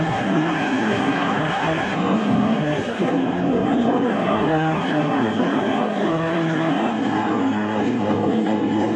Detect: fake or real fake